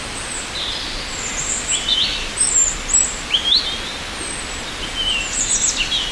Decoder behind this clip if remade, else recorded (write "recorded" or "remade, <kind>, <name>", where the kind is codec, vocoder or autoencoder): recorded